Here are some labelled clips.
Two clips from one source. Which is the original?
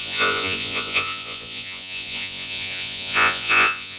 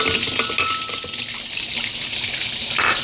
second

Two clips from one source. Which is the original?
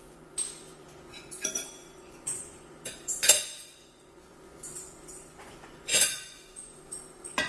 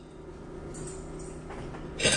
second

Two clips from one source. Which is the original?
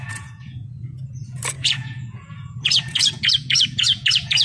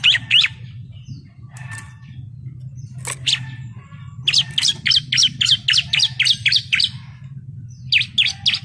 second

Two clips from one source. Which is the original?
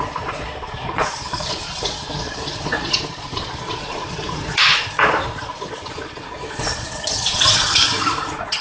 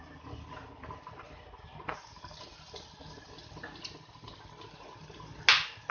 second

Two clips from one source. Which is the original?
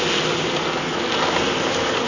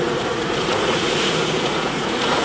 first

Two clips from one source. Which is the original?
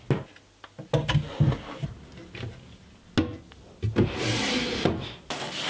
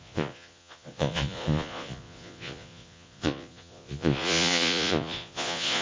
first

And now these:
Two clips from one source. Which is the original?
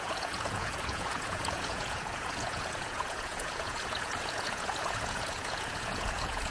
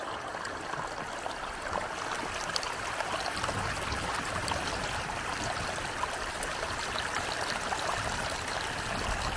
second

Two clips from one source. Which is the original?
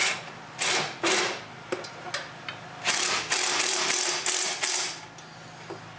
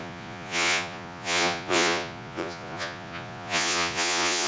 first